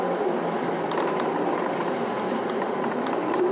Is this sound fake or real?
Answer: real